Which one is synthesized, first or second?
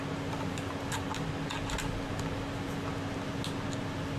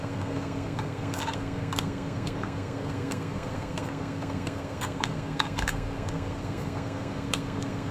second